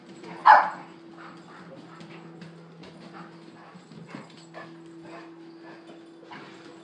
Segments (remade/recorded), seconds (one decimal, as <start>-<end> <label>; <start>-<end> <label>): 0.0-6.8 recorded